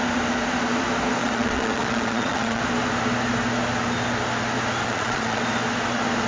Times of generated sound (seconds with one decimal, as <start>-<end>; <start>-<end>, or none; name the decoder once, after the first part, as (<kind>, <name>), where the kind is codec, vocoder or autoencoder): 1.2-2.6 (vocoder, Vocos); 4.8-5.4